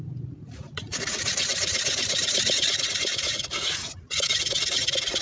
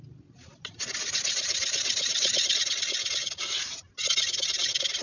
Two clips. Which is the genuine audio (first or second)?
second